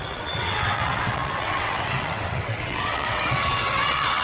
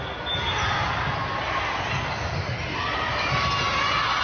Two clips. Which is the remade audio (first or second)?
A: first